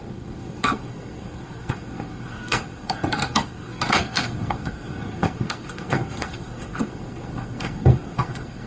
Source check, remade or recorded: remade